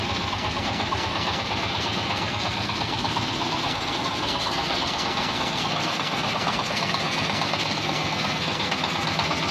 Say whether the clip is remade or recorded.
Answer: remade